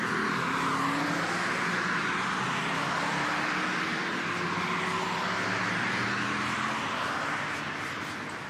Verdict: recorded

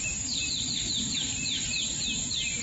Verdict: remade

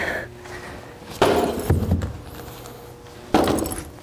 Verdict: recorded